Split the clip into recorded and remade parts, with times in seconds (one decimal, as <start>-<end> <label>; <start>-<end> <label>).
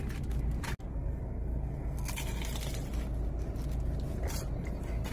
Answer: 0.0-0.9 recorded; 0.9-2.1 remade; 2.1-5.1 recorded